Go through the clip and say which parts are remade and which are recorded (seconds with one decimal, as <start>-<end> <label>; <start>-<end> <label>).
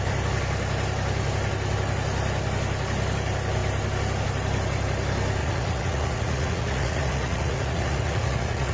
0.0-5.4 recorded; 5.4-8.7 remade